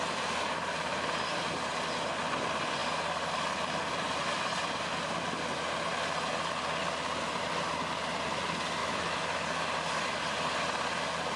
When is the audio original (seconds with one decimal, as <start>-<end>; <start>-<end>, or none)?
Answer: 0.0-8.8; 9.4-11.4